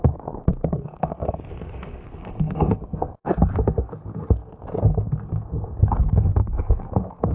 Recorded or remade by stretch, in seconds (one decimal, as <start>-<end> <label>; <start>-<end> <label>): 0.0-7.3 remade